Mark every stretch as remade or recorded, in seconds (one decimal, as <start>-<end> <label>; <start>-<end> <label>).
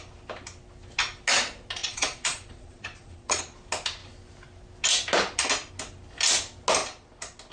0.0-1.8 recorded; 1.8-3.4 remade; 3.4-7.5 recorded